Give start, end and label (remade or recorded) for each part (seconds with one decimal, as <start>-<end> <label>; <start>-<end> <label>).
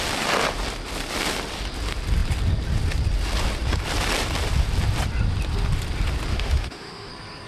0.0-6.3 recorded; 6.3-7.1 remade; 7.1-7.5 recorded